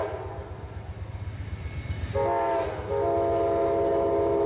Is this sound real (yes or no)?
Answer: yes